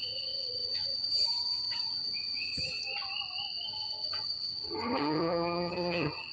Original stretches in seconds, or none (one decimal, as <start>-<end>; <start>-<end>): 2.8-3.7